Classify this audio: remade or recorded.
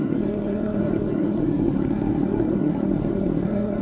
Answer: remade